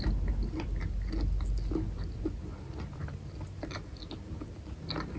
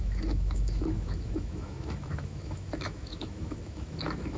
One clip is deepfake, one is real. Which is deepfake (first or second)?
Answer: second